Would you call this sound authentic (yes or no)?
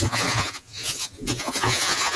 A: no